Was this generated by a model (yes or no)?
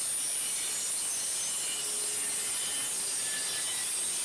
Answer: no